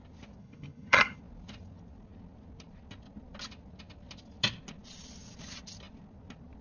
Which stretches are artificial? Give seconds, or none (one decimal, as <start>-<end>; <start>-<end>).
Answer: 0.4-1.2